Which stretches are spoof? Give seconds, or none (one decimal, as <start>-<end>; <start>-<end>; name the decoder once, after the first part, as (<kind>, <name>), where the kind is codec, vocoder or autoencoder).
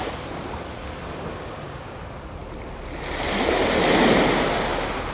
1.3-2.0 (codec, DAC)